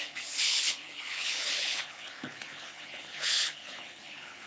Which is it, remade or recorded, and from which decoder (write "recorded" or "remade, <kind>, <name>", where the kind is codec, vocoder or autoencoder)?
remade, codec, HILCodec